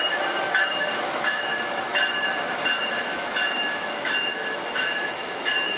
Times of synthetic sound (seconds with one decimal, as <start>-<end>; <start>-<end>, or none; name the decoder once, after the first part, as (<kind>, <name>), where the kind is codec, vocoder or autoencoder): 0.0-5.8 (autoencoder, DAC-VAE)